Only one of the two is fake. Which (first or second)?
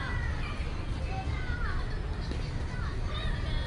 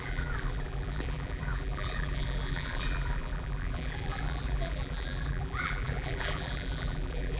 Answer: second